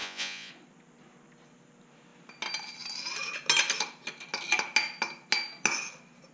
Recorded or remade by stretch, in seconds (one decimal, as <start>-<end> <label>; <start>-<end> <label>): 0.0-0.5 remade; 0.5-6.3 recorded